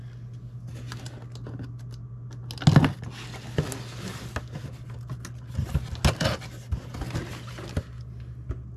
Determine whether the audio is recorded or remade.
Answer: recorded